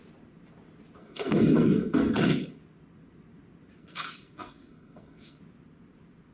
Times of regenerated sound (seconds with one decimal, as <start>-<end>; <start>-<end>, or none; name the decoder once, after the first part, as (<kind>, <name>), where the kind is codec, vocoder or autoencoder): 1.0-2.6 (codec, SNAC); 3.8-5.4